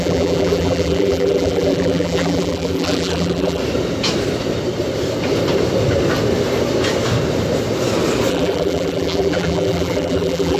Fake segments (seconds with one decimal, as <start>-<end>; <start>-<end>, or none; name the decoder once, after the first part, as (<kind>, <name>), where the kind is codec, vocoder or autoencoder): 0.0-3.6 (vocoder, BigVGAN v2); 8.3-10.6